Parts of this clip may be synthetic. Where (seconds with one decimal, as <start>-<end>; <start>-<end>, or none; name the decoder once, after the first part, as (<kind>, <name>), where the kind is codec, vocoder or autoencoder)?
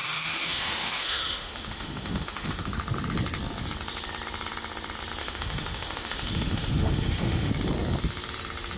0.0-2.7 (autoencoder, DAC-VAE); 5.2-7.5